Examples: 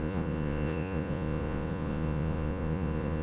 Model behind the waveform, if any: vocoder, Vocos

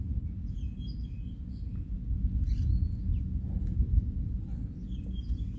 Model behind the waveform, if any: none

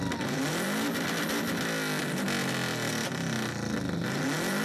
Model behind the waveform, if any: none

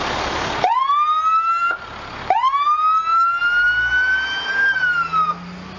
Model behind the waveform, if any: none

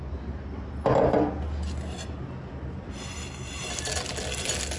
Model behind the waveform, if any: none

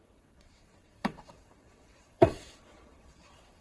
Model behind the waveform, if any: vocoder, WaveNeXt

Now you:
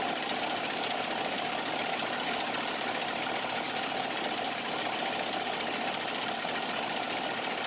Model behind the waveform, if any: none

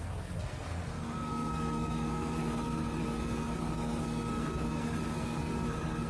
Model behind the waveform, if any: codec, SNAC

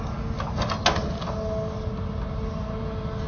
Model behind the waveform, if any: none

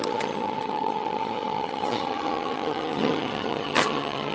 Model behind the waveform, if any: vocoder, HiFi-GAN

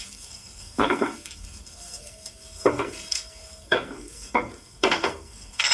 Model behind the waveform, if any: codec, SNAC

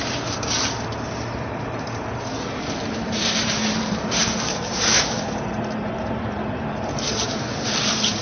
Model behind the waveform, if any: vocoder, BigVGAN v2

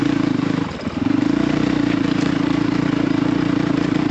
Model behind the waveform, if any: vocoder, BigVGAN v2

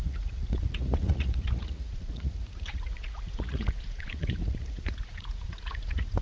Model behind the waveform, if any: vocoder, Vocos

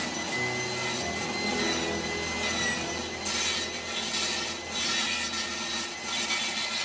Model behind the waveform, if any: none